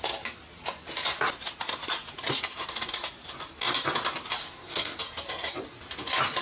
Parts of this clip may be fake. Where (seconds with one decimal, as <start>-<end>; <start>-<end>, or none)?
4.4-5.0